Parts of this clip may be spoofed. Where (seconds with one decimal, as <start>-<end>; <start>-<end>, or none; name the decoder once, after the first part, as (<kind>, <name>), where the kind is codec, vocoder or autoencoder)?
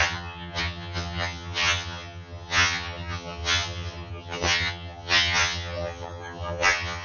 0.0-7.0 (vocoder, HiFi-GAN)